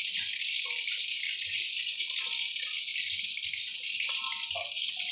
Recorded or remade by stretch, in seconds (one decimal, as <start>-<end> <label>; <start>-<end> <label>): 0.0-5.1 recorded